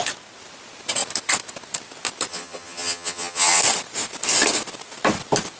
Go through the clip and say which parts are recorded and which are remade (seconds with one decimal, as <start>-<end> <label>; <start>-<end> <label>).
0.0-2.3 recorded; 2.3-3.6 remade; 3.6-5.6 recorded